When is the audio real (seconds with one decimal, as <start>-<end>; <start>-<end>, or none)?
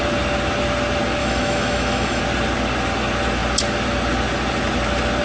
0.0-1.2; 2.2-5.2